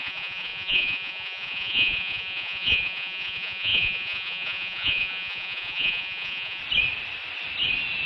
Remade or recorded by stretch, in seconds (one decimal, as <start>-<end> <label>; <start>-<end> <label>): 0.0-6.6 remade; 6.6-8.1 recorded

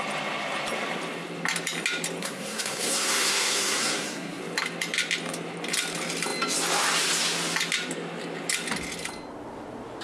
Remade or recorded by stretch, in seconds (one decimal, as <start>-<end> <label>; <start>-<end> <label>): 0.0-2.2 recorded; 2.2-4.4 remade; 4.4-10.0 recorded

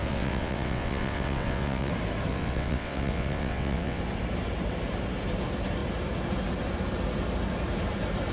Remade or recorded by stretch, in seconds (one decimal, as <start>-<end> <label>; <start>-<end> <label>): 0.0-1.9 remade; 1.9-2.3 recorded; 2.3-4.0 remade; 4.0-8.3 recorded

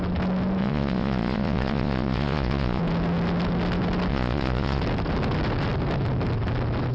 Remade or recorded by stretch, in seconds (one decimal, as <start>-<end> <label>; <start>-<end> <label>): 0.0-0.6 recorded; 0.6-2.8 remade; 2.8-4.1 recorded; 4.1-4.8 remade; 4.8-6.9 recorded

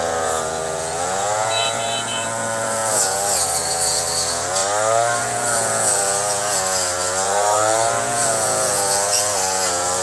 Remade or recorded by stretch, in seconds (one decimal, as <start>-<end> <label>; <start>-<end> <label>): 0.0-4.6 remade; 4.6-5.2 recorded; 5.2-10.0 remade

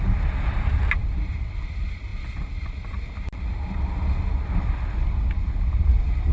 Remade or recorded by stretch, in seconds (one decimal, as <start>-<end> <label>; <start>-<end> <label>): 0.0-6.3 recorded